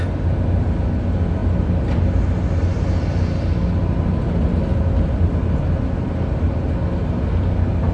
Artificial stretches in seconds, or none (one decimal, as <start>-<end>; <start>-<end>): none